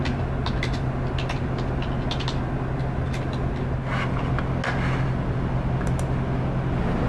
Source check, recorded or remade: recorded